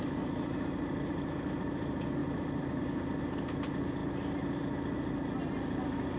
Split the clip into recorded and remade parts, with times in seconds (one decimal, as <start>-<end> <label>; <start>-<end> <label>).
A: 0.0-6.2 recorded